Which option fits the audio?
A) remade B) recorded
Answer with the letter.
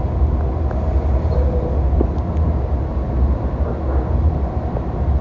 B